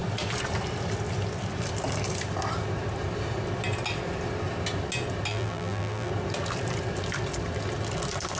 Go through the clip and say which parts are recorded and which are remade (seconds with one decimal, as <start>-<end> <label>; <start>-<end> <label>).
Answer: 0.0-5.3 recorded; 5.3-6.1 remade; 6.1-8.4 recorded